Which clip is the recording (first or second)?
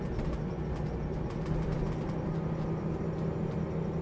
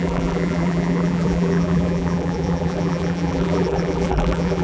first